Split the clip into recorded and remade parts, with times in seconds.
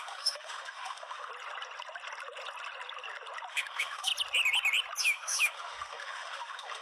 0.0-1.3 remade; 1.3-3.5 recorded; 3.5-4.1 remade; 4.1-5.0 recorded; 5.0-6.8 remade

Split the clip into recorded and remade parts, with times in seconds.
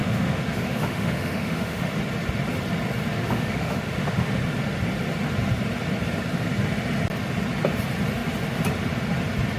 0.0-2.0 remade; 2.0-3.1 recorded; 3.1-4.4 remade; 4.4-9.6 recorded